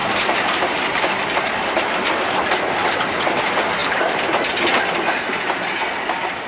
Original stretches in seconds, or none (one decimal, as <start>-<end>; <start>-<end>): 3.4-3.8; 4.7-6.5